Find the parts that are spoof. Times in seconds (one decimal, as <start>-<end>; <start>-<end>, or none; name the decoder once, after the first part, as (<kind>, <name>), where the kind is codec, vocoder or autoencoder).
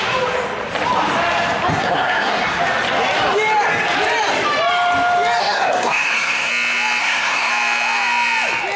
1.7-2.6 (codec, SNAC); 5.4-6.5; 7.0-7.5